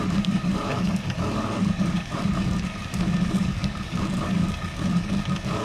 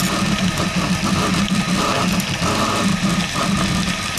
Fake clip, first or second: first